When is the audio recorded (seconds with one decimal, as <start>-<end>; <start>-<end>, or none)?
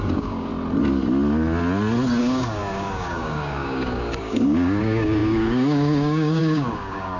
0.5-2.2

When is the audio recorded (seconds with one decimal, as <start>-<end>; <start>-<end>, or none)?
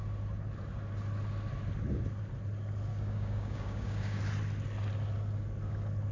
0.0-2.9; 4.2-6.1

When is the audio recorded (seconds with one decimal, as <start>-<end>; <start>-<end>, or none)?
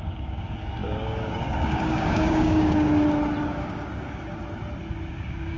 2.9-3.4; 4.4-5.1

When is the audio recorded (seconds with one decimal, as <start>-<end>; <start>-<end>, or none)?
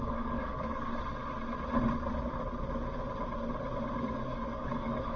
0.9-4.0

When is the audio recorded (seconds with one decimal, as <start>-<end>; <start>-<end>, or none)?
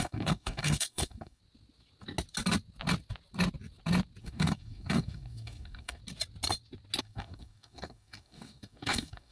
1.4-4.2; 6.0-7.0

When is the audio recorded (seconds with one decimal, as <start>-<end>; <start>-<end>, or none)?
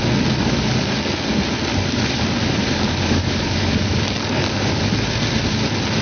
0.0-0.4; 0.9-1.7; 4.8-6.0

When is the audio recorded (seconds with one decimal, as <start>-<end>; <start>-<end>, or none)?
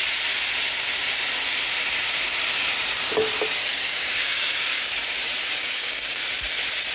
0.0-3.7; 4.9-5.6; 6.2-6.9